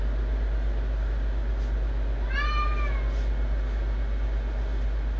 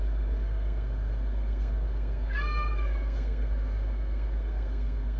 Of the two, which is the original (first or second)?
first